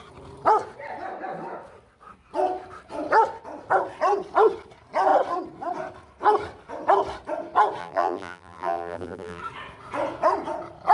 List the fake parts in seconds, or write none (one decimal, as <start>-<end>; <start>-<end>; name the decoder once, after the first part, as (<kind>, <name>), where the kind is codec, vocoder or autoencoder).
7.8-9.4 (vocoder, BigVGAN v2)